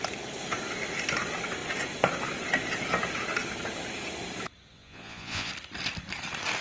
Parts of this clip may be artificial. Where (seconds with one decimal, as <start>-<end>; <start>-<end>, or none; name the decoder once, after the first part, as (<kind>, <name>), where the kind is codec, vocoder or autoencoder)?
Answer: 4.7-5.5 (vocoder, Vocos)